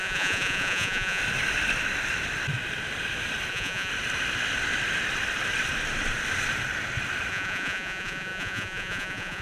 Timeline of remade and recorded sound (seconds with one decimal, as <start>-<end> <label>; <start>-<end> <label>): 0.0-1.2 remade; 1.2-3.5 recorded; 3.5-3.9 remade; 3.9-7.3 recorded; 7.3-9.4 remade